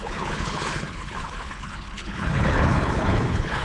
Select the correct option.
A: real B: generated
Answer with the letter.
B